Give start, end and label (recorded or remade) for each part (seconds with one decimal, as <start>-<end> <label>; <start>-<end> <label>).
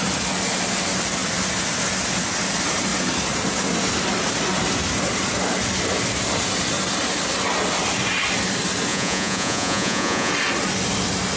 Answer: 0.0-8.9 recorded; 8.9-10.3 remade; 10.3-11.4 recorded